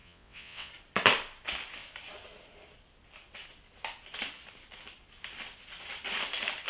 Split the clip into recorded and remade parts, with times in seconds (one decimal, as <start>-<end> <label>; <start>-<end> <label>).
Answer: 0.0-0.7 remade; 0.7-6.7 recorded